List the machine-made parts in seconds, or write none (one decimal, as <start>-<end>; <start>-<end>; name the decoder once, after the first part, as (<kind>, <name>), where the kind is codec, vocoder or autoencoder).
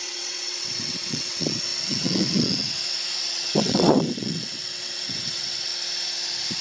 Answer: 0.0-5.7 (vocoder, WaveNeXt)